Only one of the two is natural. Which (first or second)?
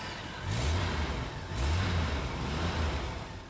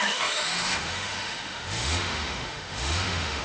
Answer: first